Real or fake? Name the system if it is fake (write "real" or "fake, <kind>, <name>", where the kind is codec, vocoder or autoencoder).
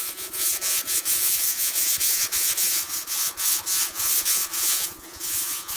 fake, vocoder, Vocos